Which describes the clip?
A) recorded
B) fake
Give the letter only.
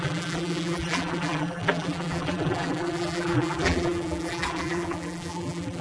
B